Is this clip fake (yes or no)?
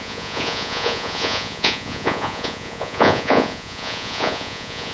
yes